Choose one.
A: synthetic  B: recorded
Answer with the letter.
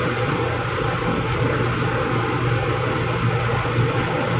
B